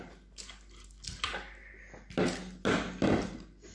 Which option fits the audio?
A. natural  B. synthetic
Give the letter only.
A